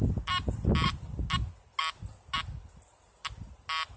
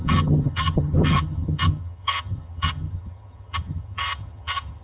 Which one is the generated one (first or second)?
second